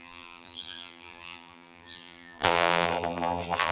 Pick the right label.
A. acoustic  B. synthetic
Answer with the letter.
B